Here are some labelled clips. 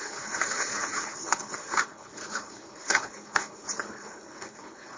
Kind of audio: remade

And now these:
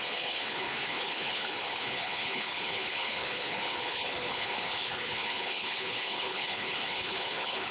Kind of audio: remade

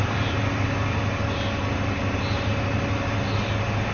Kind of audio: recorded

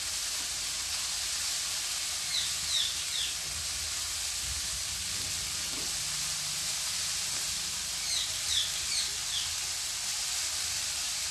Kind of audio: recorded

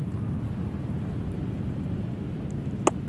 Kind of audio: recorded